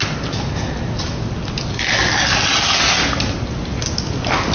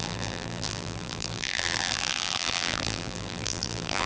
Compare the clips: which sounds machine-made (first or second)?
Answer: second